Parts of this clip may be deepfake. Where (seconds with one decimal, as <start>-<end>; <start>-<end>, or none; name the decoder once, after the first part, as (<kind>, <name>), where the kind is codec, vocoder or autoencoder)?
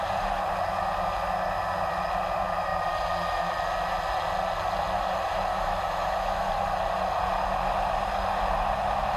5.5-6.5 (autoencoder, DAC-VAE)